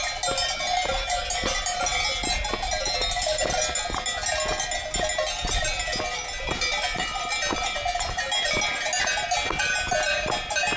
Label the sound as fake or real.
real